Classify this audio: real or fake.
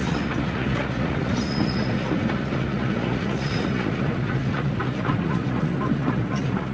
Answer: fake